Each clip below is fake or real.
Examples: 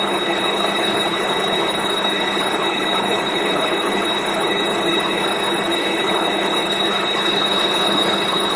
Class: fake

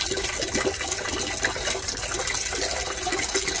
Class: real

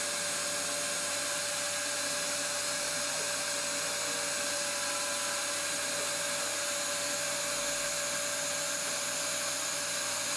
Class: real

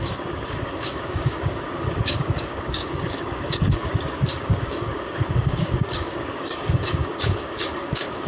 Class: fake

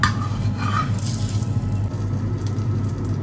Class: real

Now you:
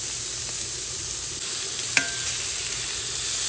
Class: real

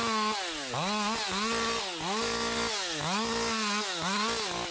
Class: real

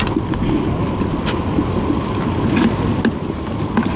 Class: real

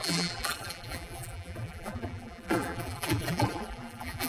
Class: fake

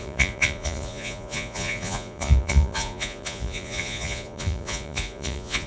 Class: fake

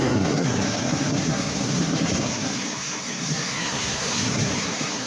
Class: fake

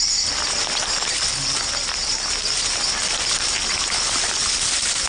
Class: fake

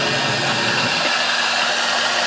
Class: real